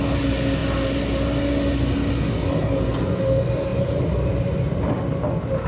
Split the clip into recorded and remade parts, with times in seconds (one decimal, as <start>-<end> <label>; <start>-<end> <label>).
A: 0.0-5.7 recorded